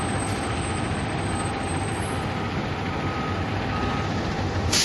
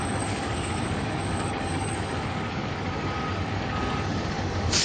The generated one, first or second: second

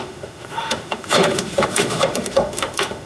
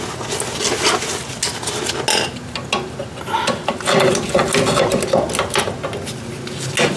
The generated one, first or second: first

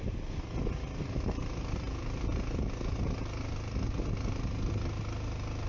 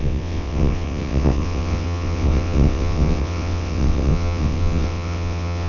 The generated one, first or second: second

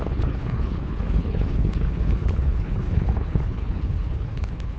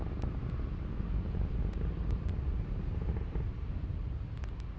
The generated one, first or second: first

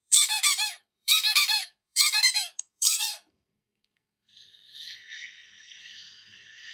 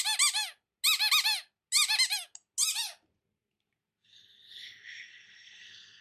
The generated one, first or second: first